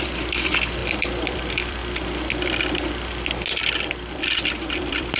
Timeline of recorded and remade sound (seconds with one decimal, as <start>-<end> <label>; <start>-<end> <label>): 0.0-1.8 remade; 1.8-3.9 recorded; 3.9-5.2 remade